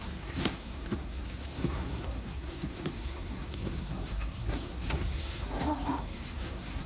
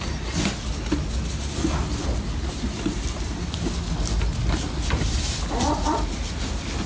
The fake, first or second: first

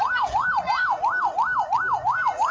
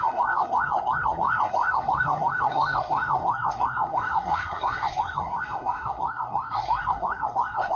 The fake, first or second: second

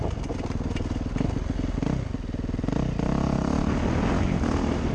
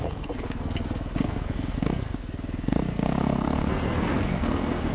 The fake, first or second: second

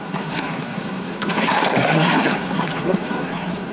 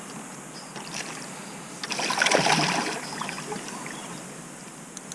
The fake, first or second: first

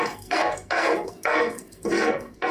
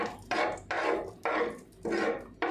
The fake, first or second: first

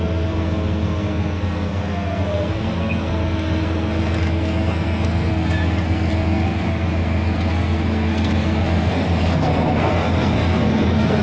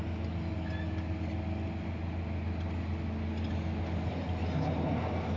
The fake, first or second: first